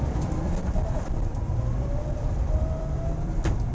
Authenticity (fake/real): fake